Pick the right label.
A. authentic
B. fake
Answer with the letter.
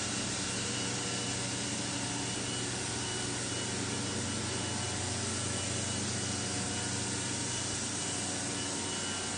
A